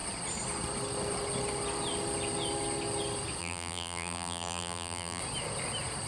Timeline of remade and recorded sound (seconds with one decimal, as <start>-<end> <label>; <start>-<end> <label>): 0.0-3.4 recorded; 3.4-5.2 remade; 5.2-6.1 recorded